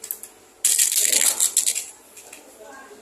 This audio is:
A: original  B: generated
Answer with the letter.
A